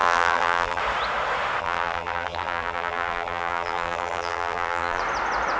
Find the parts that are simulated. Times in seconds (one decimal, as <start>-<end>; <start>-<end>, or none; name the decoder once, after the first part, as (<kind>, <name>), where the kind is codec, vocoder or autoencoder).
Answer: 0.0-0.8 (vocoder, BigVGAN v2); 1.6-5.0